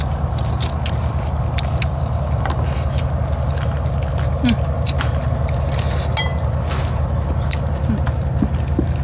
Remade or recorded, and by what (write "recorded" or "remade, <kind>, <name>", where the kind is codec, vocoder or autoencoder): recorded